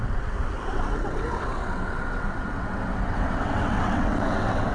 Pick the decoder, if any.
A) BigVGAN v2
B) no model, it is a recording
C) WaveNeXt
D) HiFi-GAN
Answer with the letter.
C